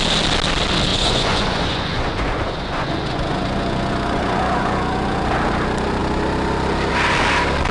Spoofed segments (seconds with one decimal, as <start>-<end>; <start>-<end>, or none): 0.9-5.2